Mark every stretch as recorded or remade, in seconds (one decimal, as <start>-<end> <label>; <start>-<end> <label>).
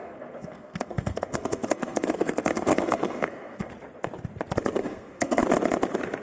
0.0-3.7 remade; 3.7-4.8 recorded; 4.8-5.4 remade; 5.4-6.2 recorded